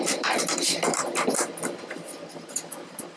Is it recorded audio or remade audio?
recorded